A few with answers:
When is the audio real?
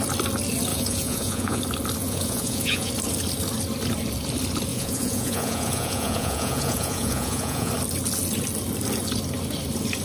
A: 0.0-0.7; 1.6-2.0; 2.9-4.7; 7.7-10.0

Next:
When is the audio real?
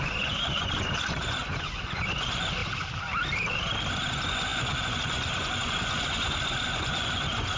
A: 2.6-4.1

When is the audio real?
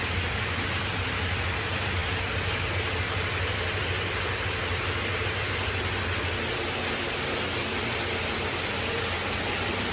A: 0.0-9.9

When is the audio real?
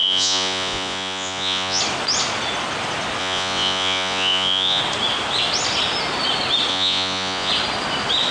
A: 1.8-3.2; 4.8-6.7; 7.5-8.3